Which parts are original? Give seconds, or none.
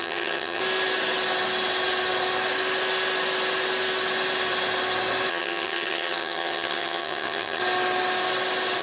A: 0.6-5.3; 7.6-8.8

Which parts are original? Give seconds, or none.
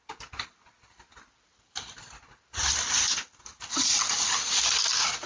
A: 0.0-5.3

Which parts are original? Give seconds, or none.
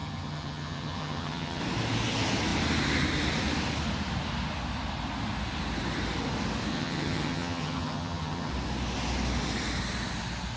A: 1.6-6.7; 8.5-10.6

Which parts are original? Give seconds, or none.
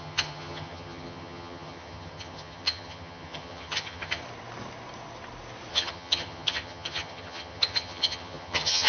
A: 4.2-5.7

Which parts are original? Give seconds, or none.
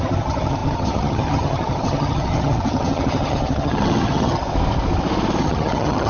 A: 4.4-5.4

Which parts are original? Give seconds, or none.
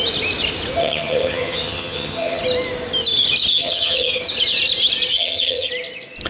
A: 0.0-0.8; 2.4-3.5; 4.2-5.1; 5.7-6.3